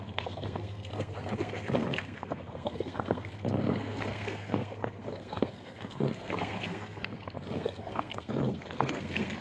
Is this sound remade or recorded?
remade